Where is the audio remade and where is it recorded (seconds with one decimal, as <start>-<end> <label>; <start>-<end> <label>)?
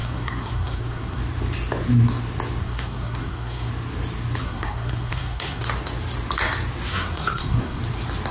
0.0-1.2 remade; 1.2-2.6 recorded; 2.6-3.7 remade; 3.7-4.4 recorded; 4.4-5.6 remade; 5.6-6.9 recorded; 6.9-7.8 remade; 7.8-8.3 recorded